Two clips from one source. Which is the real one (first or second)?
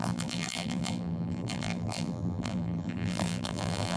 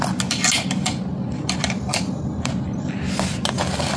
second